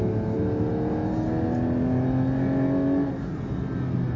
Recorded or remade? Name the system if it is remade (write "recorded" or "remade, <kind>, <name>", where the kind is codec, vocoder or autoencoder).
recorded